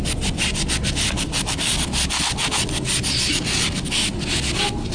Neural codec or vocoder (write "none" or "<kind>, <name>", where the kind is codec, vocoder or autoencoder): none